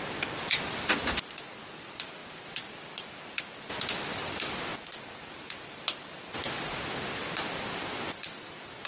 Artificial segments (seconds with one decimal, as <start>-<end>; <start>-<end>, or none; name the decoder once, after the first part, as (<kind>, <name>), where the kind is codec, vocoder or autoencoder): 0.0-2.2 (vocoder, BigVGAN v2); 3.4-4.7; 6.9-8.9